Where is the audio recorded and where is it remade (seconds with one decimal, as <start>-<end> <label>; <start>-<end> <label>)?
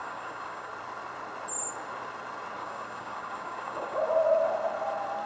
0.0-0.7 remade; 0.7-2.6 recorded; 2.6-4.0 remade; 4.0-5.3 recorded